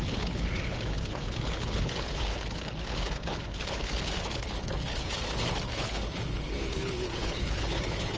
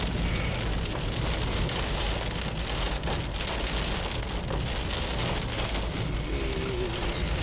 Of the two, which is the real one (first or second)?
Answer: second